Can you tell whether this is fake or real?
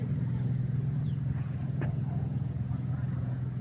fake